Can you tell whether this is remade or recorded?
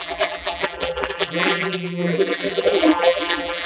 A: remade